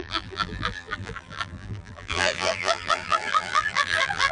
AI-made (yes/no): yes